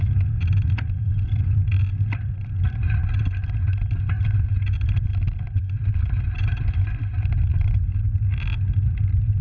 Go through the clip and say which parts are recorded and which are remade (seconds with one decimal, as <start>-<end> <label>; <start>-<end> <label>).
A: 0.0-9.4 recorded

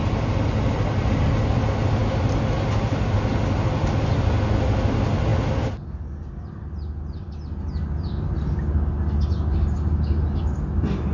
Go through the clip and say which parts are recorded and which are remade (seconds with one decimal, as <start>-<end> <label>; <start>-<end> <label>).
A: 0.0-11.1 recorded

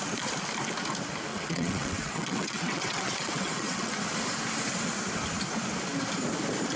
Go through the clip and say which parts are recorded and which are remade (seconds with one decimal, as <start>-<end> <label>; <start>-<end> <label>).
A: 0.0-1.3 recorded; 1.3-4.0 remade; 4.0-6.8 recorded

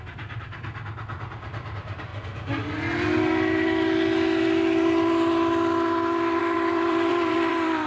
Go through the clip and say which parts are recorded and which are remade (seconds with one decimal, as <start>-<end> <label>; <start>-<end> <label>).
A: 0.0-2.1 remade; 2.1-6.4 recorded; 6.4-7.9 remade

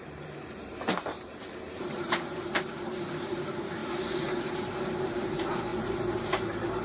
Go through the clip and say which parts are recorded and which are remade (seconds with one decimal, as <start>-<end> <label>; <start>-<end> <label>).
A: 0.0-2.7 remade; 2.7-3.3 recorded; 3.3-3.8 remade; 3.8-4.5 recorded; 4.5-6.8 remade

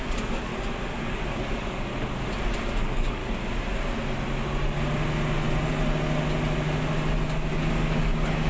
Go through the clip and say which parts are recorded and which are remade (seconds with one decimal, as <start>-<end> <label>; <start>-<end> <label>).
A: 0.0-0.5 remade; 0.5-1.0 recorded; 1.0-1.9 remade; 1.9-2.8 recorded; 2.8-3.2 remade; 3.2-7.5 recorded; 7.5-8.5 remade

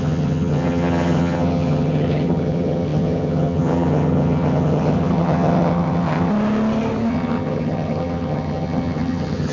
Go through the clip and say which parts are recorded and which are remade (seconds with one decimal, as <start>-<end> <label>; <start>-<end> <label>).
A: 0.0-6.3 remade; 6.3-7.1 recorded; 7.1-9.5 remade

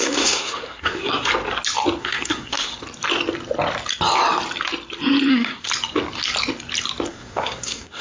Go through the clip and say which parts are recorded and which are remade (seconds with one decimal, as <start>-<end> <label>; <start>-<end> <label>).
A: 0.0-1.3 remade; 1.3-2.0 recorded; 2.0-2.7 remade; 2.7-5.3 recorded; 5.3-5.7 remade; 5.7-7.1 recorded; 7.1-8.0 remade